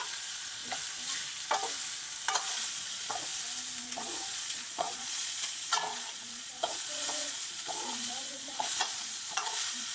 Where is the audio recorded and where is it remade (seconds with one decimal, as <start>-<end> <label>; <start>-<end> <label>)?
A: 0.0-0.6 remade; 0.6-2.3 recorded; 2.3-3.3 remade; 3.3-3.8 recorded; 3.8-9.9 remade